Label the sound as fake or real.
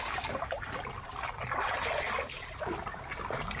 real